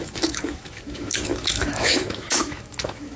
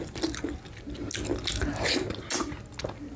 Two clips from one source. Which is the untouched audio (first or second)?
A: second